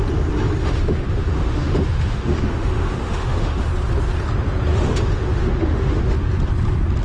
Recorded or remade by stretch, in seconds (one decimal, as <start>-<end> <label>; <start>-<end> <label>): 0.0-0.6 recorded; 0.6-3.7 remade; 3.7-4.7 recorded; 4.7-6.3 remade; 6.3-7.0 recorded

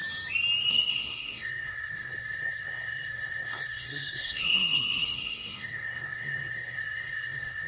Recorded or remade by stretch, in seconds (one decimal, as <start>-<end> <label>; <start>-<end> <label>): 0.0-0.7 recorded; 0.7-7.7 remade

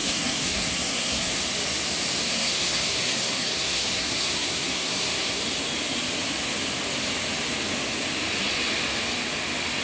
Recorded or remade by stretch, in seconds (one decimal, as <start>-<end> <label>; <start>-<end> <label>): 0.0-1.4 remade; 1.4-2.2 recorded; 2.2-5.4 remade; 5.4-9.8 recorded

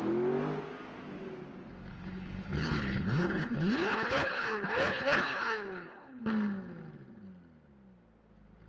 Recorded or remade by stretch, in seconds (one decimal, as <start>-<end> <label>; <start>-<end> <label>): 0.0-1.9 recorded; 1.9-6.2 remade; 6.2-8.7 recorded

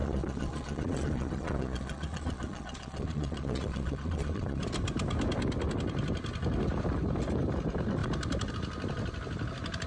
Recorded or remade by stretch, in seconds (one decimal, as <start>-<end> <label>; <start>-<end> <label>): 0.0-4.6 remade; 4.6-9.9 recorded

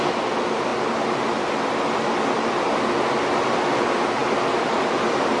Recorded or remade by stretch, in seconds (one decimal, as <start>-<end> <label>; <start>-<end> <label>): 0.0-5.4 recorded

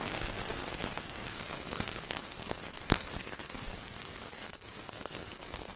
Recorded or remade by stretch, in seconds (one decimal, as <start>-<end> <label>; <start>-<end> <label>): 0.0-5.8 remade